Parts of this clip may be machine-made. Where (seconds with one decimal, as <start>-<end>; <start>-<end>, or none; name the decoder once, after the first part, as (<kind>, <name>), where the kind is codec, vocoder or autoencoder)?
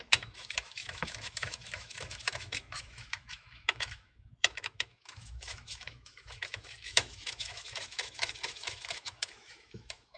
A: 0.0-10.2 (autoencoder, DAC-VAE)